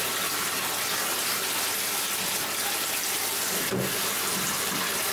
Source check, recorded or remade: recorded